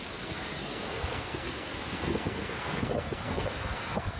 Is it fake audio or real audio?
fake